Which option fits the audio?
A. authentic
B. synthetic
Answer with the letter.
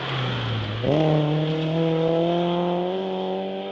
A